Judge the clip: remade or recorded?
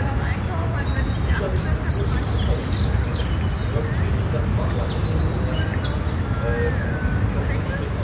recorded